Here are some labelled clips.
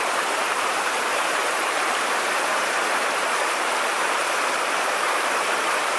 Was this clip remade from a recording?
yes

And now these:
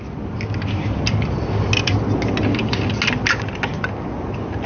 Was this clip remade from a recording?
no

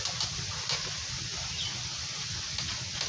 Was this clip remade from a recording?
no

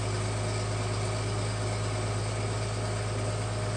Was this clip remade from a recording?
no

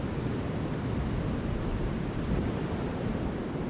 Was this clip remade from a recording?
yes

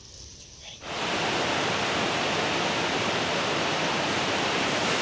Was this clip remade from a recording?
yes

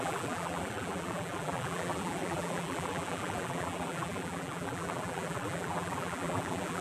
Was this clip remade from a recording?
yes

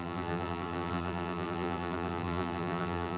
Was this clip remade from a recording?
yes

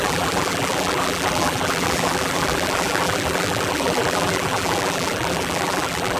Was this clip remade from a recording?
yes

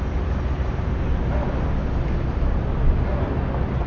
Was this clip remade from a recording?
no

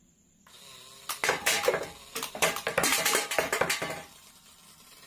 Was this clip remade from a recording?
yes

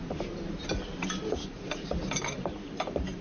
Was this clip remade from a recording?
yes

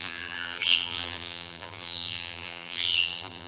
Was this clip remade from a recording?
yes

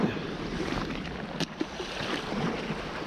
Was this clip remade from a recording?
no